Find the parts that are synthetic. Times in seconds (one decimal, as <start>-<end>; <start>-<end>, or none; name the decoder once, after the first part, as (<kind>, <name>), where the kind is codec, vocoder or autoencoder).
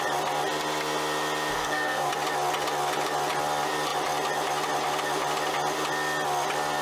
1.5-2.1 (codec, SNAC)